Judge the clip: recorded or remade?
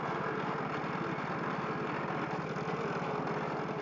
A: recorded